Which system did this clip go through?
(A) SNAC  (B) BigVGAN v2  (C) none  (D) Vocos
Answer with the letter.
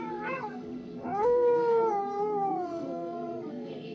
A